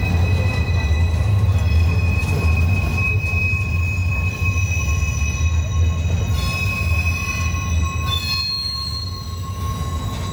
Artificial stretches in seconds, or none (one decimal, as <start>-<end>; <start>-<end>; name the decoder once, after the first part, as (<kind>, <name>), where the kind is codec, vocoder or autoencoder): none